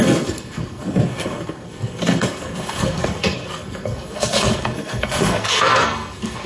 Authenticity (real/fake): fake